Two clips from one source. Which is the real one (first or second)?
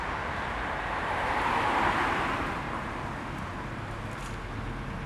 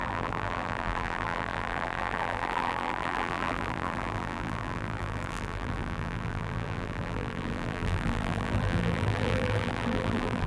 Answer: first